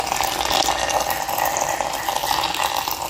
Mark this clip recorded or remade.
recorded